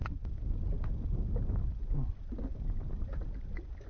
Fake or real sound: real